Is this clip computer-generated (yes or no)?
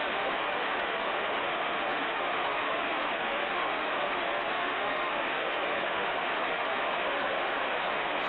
yes